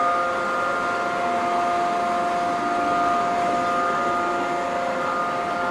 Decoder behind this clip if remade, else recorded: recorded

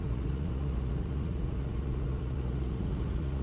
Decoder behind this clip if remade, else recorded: remade, vocoder, Vocos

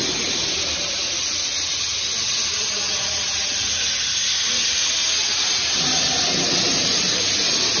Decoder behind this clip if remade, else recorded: recorded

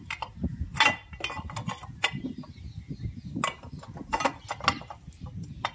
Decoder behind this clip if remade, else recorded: recorded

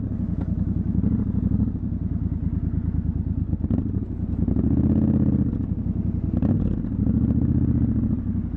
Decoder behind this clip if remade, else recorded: recorded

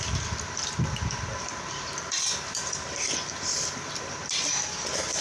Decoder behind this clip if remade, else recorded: remade, vocoder, BigVGAN v2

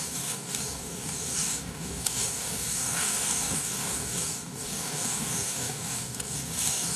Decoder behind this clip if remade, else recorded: remade, codec, DAC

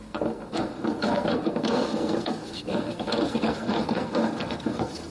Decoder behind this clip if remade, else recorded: remade, codec, SNAC